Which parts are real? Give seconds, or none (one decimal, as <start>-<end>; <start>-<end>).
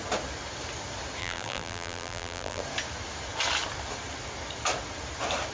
0.0-1.2; 2.6-5.5